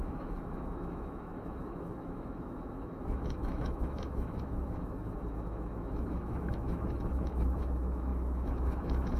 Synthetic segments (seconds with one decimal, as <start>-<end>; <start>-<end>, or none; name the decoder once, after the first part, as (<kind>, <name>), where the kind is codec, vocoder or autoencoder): 0.0-9.2 (autoencoder, DAC-VAE)